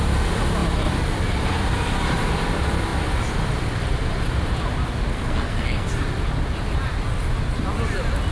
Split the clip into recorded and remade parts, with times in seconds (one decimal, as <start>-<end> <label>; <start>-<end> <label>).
0.0-5.1 recorded; 5.1-5.9 remade; 5.9-8.3 recorded

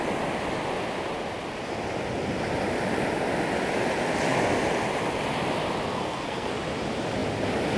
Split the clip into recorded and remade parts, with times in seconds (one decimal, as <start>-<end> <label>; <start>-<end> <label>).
0.0-5.9 recorded; 5.9-6.6 remade; 6.6-7.8 recorded

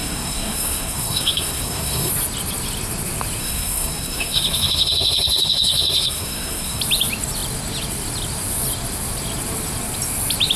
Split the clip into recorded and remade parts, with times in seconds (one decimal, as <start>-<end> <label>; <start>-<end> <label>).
0.0-2.1 remade; 2.1-3.4 recorded; 3.4-6.8 remade; 6.8-10.6 recorded

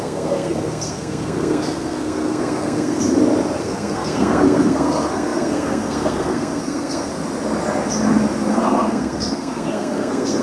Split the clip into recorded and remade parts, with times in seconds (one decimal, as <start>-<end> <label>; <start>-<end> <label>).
0.0-3.0 remade; 3.0-3.6 recorded; 3.6-7.1 remade; 7.1-8.5 recorded; 8.5-10.4 remade

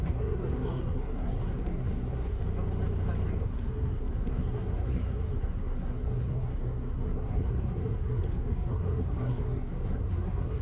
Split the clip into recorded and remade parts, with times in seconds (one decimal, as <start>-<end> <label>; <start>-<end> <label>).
0.0-2.4 remade; 2.4-3.4 recorded; 3.4-10.6 remade

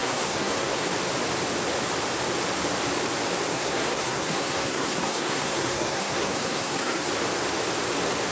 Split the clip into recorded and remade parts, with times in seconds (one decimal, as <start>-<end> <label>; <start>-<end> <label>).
0.0-0.9 remade; 0.9-3.5 recorded; 3.5-7.1 remade; 7.1-8.3 recorded

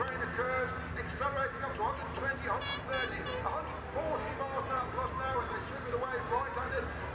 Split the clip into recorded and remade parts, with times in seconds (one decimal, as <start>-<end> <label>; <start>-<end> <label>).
0.0-7.1 recorded